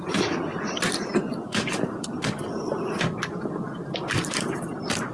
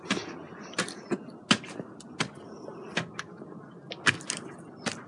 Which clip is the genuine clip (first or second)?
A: second